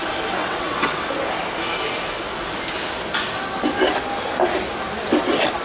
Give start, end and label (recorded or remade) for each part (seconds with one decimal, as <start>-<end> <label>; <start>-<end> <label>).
0.0-0.4 recorded; 0.4-1.0 remade; 1.0-5.6 recorded

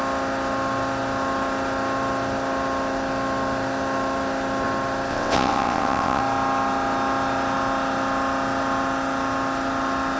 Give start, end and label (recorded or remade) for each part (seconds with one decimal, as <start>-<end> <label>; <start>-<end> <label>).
0.0-5.1 recorded; 5.1-6.2 remade; 6.2-10.2 recorded

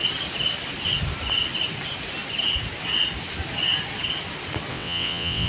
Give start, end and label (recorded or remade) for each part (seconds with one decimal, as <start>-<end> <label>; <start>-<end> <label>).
0.0-4.7 recorded; 4.7-5.5 remade

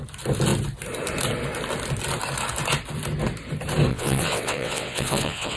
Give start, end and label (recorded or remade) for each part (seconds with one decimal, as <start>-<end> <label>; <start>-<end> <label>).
0.0-3.9 recorded; 3.9-5.6 remade

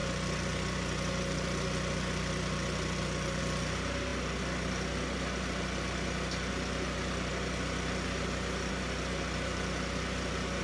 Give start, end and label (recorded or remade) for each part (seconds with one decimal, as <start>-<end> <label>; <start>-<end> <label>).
0.0-10.6 recorded

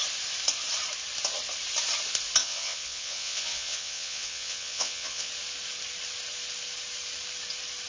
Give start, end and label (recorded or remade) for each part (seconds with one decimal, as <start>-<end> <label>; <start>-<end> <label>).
0.0-2.4 recorded; 2.4-5.3 remade; 5.3-7.9 recorded